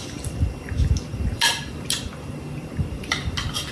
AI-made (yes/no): no